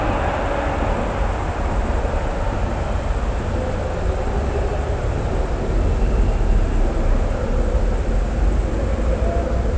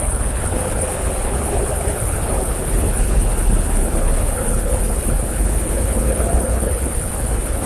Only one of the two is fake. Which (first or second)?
second